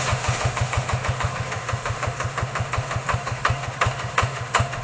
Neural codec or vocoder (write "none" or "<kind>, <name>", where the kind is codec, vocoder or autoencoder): autoencoder, DAC-VAE